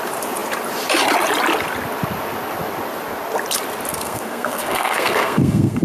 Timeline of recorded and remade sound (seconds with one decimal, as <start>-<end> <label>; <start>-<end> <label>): 0.0-3.9 recorded; 3.9-5.8 remade